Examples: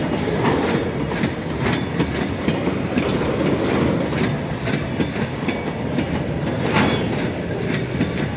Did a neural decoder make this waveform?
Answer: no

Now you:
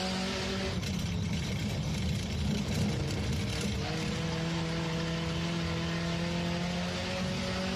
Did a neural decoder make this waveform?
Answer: no